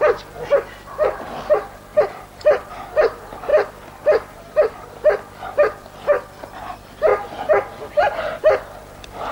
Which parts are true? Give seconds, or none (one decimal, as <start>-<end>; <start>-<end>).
0.0-1.9; 2.7-3.5; 6.4-7.1; 8.2-9.3